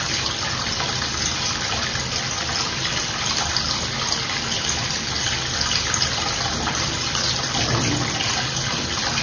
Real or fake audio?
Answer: real